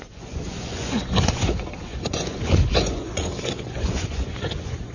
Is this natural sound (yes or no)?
no